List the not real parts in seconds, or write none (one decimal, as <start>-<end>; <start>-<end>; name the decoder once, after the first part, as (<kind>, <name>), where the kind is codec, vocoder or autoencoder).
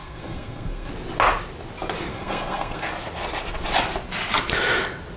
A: 0.0-0.9 (codec, SNAC); 2.1-2.9